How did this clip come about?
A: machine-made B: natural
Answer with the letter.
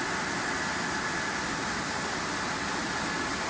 B